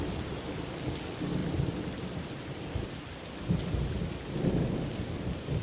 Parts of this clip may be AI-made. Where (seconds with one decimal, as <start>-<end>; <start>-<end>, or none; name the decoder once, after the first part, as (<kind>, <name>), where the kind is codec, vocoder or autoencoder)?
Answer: none